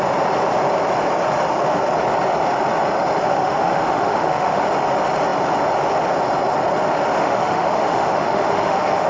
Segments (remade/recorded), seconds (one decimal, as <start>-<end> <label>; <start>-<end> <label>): 0.0-3.2 recorded; 3.2-4.6 remade; 4.6-7.2 recorded; 7.2-9.1 remade